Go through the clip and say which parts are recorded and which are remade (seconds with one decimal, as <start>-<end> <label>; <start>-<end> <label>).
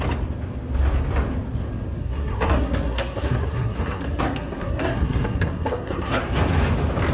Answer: 0.0-2.0 recorded; 2.0-6.2 remade; 6.2-7.1 recorded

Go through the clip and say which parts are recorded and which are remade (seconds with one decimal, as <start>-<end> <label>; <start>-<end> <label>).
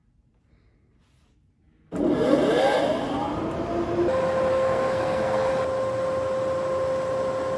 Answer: 0.0-4.5 recorded; 4.5-5.5 remade; 5.5-7.6 recorded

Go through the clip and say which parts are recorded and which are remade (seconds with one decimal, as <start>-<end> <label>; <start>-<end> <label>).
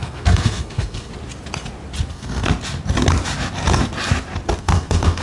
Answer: 0.0-1.1 remade; 1.1-2.1 recorded; 2.1-2.5 remade; 2.5-4.6 recorded; 4.6-5.2 remade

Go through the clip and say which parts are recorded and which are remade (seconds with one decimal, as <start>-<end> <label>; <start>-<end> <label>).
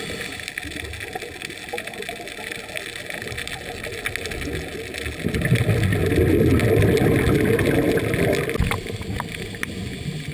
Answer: 0.0-10.3 recorded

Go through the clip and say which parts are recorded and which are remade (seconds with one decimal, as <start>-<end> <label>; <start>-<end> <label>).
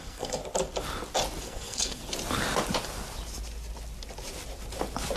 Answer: 0.0-0.4 remade; 0.4-1.4 recorded; 1.4-2.0 remade; 2.0-5.2 recorded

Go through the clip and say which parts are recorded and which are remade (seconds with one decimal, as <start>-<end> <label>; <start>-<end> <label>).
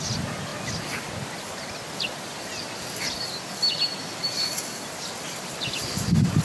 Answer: 0.0-6.4 recorded